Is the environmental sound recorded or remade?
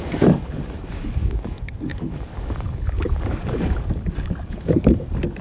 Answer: remade